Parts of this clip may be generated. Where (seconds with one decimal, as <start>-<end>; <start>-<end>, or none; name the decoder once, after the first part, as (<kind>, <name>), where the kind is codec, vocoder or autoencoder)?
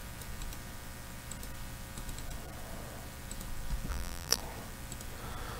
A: 3.9-4.4 (vocoder, BigVGAN v2)